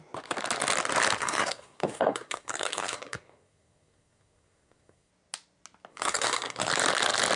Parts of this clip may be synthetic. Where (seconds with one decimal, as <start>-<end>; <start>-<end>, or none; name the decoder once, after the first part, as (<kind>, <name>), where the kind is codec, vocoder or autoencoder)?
1.2-5.1 (codec, SNAC); 5.9-6.7